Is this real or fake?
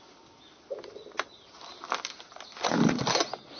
real